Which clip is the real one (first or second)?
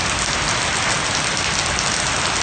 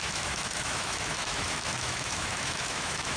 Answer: first